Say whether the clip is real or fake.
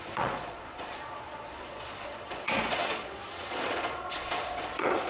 fake